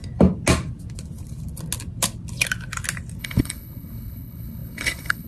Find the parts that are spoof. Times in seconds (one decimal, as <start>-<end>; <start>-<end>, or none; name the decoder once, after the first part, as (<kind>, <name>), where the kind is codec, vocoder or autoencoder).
3.2-5.3 (codec, HILCodec)